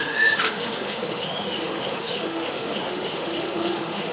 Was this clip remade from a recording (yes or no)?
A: yes